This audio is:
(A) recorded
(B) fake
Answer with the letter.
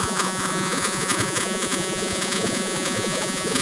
B